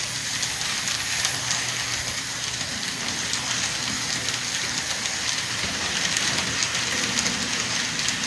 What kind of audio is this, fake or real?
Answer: real